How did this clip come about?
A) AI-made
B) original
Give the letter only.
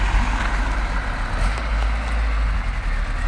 B